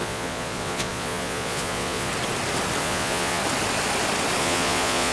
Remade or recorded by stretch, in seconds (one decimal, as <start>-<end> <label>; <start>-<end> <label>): 0.0-2.1 remade; 2.1-2.8 recorded; 2.8-3.4 remade; 3.4-4.4 recorded; 4.4-5.1 remade